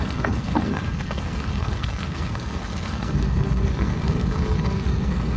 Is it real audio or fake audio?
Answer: fake